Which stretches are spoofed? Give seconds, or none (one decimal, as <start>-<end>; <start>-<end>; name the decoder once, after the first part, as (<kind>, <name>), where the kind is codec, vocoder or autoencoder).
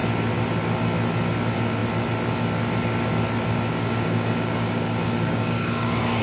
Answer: 3.7-6.2 (codec, DAC)